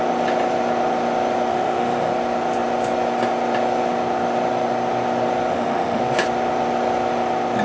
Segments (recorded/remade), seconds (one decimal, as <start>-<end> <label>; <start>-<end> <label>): 0.0-1.5 recorded; 1.5-2.1 remade; 2.1-5.5 recorded; 5.5-6.0 remade; 6.0-7.6 recorded